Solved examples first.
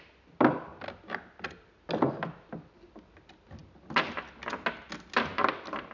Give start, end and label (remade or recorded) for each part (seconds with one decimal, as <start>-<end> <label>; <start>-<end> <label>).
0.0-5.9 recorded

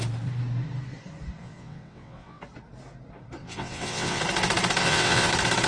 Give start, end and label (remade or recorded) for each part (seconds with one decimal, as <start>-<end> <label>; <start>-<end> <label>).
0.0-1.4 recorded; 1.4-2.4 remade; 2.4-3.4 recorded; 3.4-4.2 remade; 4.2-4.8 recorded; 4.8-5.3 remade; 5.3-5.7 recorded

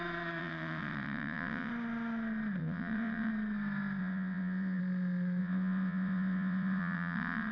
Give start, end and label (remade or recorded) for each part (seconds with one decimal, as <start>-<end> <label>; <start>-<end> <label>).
0.0-0.4 recorded; 0.4-1.7 remade; 1.7-2.6 recorded; 2.6-3.3 remade; 3.3-4.0 recorded; 4.0-4.8 remade; 4.8-5.4 recorded; 5.4-7.5 remade

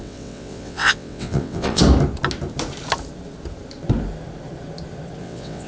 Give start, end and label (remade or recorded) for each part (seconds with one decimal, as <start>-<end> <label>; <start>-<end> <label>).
0.0-1.8 remade; 1.8-5.2 recorded; 5.2-5.7 remade

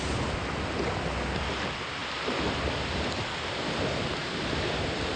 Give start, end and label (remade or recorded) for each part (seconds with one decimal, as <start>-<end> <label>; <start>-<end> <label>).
0.0-5.2 recorded

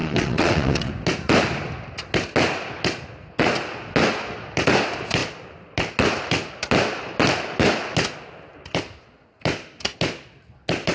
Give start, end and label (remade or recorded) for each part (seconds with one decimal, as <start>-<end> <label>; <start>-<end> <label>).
0.0-0.9 remade; 0.9-10.9 recorded